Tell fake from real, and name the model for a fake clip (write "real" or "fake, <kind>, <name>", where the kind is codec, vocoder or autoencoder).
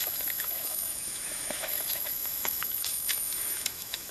fake, autoencoder, DAC-VAE